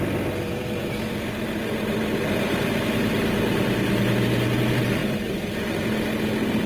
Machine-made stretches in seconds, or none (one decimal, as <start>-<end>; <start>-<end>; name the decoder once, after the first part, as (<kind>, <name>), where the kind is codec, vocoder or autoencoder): none